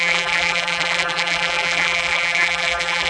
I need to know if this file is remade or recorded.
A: remade